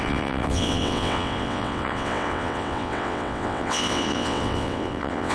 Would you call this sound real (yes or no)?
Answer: no